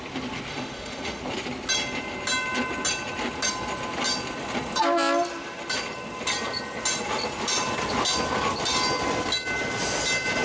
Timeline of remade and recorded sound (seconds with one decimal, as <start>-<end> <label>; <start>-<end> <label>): 0.0-0.5 recorded; 0.5-1.2 remade; 1.2-10.4 recorded